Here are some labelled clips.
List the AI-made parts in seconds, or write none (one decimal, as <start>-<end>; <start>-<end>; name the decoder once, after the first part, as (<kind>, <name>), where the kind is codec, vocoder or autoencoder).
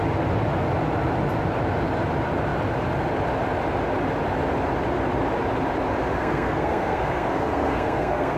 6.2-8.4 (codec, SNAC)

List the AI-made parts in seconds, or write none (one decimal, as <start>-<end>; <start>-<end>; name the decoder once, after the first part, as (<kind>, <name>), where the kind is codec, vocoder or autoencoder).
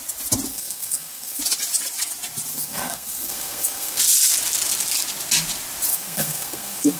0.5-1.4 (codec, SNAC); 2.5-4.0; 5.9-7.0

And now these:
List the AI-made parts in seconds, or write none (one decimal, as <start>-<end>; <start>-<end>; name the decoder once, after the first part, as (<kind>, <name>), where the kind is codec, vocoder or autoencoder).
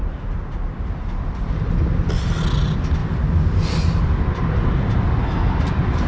none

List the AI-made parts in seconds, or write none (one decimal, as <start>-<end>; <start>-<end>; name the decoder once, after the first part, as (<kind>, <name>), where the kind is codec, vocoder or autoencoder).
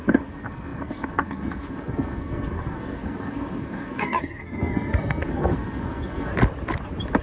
0.0-6.3 (codec, SNAC)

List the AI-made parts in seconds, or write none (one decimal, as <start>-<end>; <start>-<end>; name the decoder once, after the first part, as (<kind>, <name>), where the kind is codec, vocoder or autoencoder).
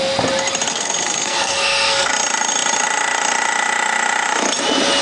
0.7-2.1 (codec, SNAC)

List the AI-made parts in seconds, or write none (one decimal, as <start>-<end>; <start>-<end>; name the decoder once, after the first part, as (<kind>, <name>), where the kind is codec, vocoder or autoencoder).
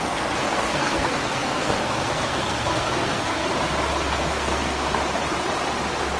0.0-3.5 (codec, SNAC); 4.2-4.9